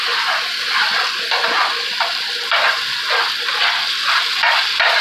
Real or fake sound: real